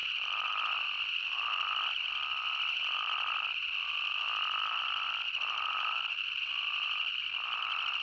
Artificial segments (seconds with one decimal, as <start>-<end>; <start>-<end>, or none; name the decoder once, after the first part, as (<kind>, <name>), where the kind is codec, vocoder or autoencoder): none

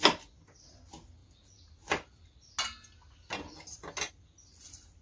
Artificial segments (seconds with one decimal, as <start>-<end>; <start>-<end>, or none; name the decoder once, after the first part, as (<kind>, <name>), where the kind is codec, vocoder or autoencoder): none

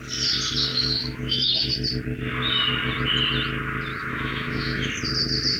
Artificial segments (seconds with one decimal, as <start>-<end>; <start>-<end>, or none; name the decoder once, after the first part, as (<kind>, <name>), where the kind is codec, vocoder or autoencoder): 0.7-1.7 (autoencoder, DAC-VAE); 4.0-4.9

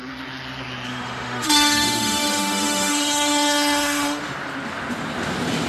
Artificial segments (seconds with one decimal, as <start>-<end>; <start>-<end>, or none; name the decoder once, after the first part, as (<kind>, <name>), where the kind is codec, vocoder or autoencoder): 0.9-4.2 (autoencoder, DAC-VAE)

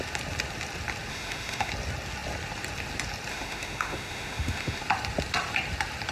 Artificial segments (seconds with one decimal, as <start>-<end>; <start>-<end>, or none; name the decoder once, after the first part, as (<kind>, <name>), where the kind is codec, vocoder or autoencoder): 1.1-1.7 (autoencoder, DAC-VAE); 3.3-4.8

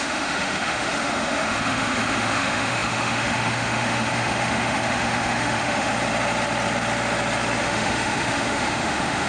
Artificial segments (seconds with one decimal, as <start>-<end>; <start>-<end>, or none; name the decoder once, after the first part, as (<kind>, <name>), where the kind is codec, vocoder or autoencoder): 0.0-5.9 (autoencoder, DAC-VAE); 7.6-9.3

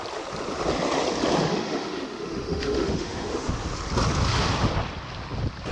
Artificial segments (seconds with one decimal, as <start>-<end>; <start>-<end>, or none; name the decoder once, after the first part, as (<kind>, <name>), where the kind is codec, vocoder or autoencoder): 1.5-3.5 (autoencoder, DAC-VAE)